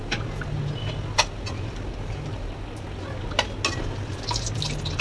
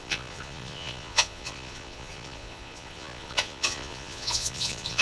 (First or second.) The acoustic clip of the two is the first